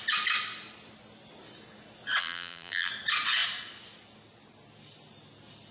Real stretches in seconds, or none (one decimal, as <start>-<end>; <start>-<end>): 0.0-2.2; 2.9-5.7